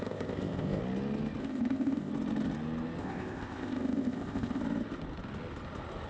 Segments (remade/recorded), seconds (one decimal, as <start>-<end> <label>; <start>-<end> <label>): 0.0-0.8 remade; 0.8-1.4 recorded; 1.4-2.1 remade; 2.1-3.0 recorded; 3.0-4.6 remade; 4.6-6.1 recorded